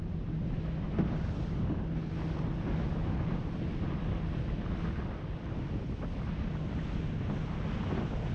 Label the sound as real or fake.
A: real